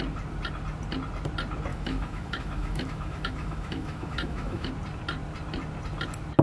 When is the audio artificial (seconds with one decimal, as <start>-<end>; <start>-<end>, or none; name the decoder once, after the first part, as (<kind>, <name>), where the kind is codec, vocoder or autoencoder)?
1.7-4.7 (autoencoder, DAC-VAE)